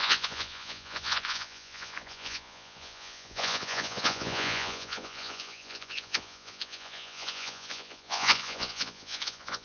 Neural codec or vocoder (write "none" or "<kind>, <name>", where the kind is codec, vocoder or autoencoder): vocoder, Vocos